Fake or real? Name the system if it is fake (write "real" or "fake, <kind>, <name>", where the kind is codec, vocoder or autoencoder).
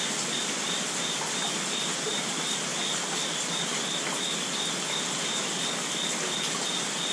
real